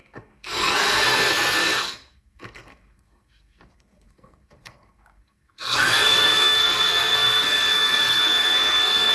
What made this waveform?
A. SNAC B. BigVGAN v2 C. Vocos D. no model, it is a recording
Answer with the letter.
A